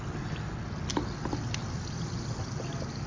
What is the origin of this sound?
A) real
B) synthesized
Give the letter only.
A